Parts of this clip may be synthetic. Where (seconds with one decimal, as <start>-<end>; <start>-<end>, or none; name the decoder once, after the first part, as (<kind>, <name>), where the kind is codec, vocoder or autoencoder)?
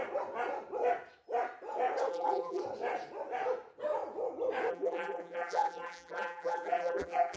2.1-2.6 (vocoder, BigVGAN v2); 4.7-7.4